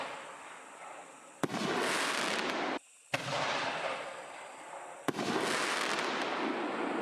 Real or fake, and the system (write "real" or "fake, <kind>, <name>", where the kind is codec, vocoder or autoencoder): real